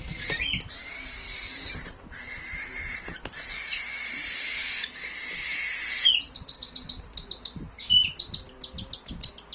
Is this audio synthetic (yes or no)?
no